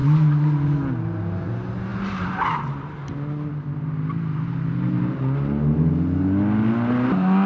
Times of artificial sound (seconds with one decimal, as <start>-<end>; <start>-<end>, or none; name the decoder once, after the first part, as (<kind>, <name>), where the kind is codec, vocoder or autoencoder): none